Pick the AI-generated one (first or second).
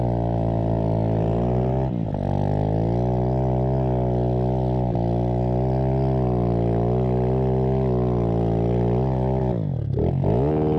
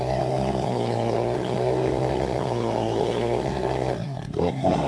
second